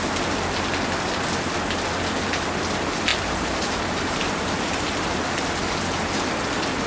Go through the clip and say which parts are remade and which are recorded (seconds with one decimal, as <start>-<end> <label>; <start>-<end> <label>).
0.0-3.1 recorded; 3.1-5.2 remade; 5.2-6.9 recorded